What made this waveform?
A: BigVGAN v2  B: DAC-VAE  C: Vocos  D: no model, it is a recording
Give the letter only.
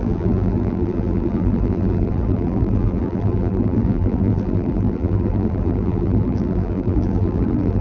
A